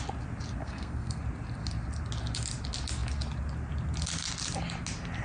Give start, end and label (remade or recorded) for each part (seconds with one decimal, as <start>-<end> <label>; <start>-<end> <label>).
0.0-0.6 recorded; 0.6-1.2 remade; 1.2-5.2 recorded

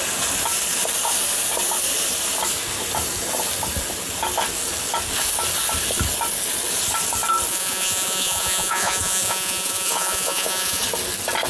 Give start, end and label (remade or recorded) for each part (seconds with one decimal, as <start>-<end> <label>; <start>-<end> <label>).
0.0-7.5 recorded; 7.5-10.8 remade; 10.8-11.5 recorded